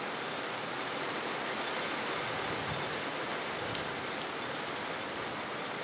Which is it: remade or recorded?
recorded